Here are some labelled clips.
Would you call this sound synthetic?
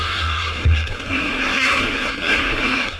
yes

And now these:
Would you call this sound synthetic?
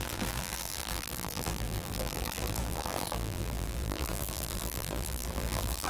yes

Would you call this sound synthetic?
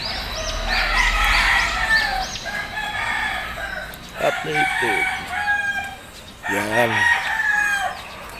no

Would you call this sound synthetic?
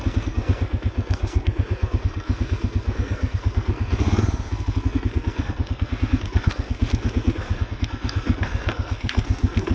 yes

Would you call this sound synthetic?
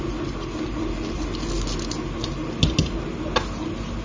no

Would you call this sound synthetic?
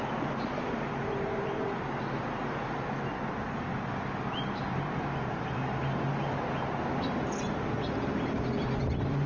no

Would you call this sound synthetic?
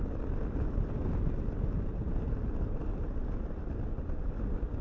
no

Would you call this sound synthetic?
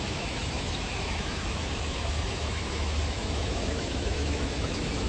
yes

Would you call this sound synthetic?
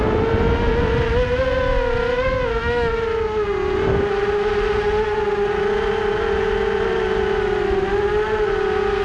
no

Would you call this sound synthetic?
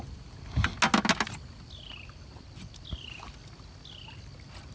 no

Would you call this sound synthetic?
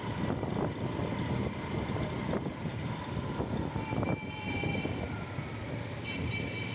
no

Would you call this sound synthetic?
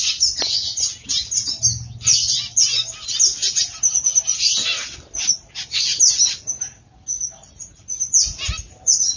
no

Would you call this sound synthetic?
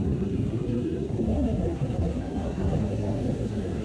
yes